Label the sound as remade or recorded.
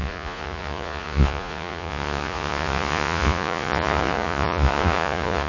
remade